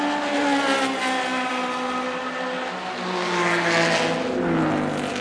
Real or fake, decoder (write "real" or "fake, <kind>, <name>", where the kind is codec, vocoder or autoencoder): real